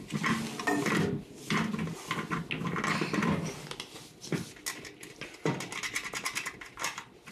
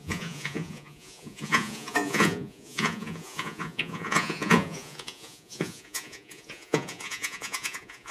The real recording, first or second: first